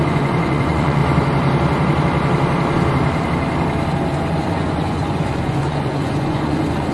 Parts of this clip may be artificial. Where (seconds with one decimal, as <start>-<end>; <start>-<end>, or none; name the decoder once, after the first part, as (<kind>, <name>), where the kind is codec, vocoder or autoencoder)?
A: 0.0-1.0 (vocoder, Vocos); 4.4-6.9